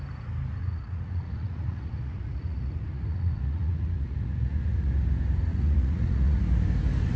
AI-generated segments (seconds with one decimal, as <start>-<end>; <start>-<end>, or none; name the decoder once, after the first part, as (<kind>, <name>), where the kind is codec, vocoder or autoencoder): 0.6-4.9 (vocoder, Vocos); 5.5-6.4